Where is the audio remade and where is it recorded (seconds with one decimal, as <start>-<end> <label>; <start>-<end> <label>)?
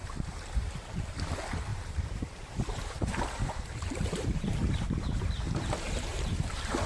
0.0-1.0 remade; 1.0-1.7 recorded; 1.7-5.2 remade; 5.2-6.1 recorded; 6.1-6.9 remade